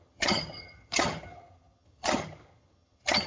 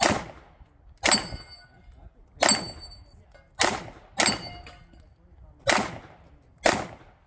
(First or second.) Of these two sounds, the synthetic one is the first